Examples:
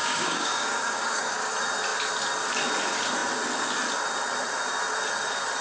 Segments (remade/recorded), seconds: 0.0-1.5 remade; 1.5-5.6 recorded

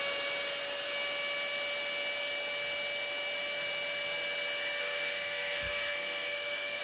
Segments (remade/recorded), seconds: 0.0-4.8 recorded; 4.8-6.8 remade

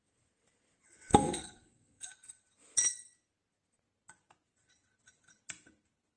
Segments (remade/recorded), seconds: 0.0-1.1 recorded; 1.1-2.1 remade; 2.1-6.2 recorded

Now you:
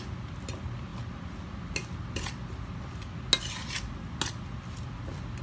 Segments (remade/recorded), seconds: 0.0-5.4 recorded

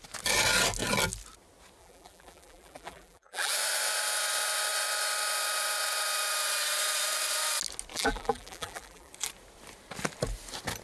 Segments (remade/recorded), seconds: 0.0-1.8 recorded; 1.8-3.5 remade; 3.5-7.9 recorded; 7.9-9.1 remade; 9.1-10.8 recorded